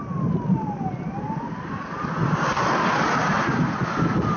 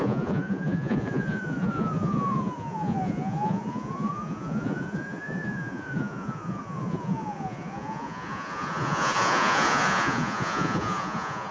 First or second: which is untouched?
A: first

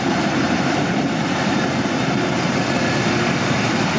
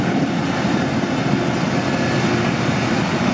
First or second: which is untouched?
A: second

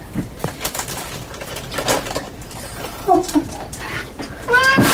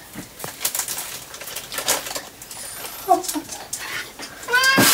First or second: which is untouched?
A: second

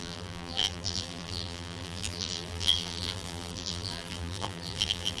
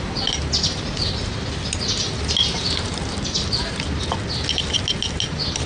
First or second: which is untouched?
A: second